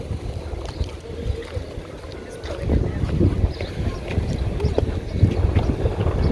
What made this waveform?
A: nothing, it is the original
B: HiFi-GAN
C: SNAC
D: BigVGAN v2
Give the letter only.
A